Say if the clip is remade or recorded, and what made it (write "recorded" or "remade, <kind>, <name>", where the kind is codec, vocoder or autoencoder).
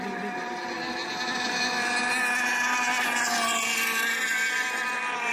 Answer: recorded